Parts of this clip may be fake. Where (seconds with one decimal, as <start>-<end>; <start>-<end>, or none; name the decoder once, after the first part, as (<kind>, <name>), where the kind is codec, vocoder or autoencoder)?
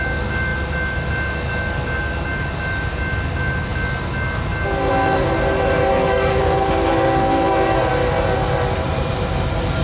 5.9-7.9 (codec, SNAC)